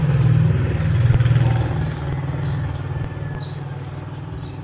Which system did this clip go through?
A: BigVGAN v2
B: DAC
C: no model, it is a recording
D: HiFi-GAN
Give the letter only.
C